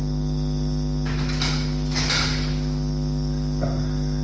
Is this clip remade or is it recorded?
recorded